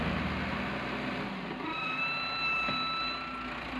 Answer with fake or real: real